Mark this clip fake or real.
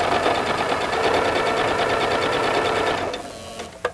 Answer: real